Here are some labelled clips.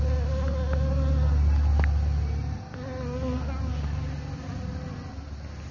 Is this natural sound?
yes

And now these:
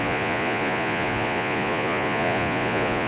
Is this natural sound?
no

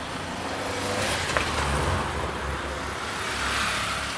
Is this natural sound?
yes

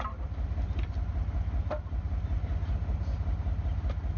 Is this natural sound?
yes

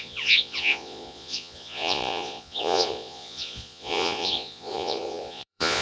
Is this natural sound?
no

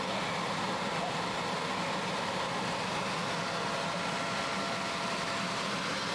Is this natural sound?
yes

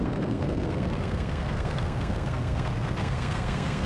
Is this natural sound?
no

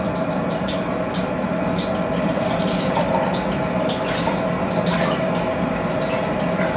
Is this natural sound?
yes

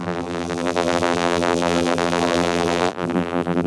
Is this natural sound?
no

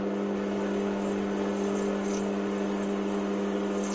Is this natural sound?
yes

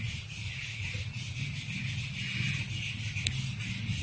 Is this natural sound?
yes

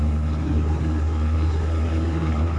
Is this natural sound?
no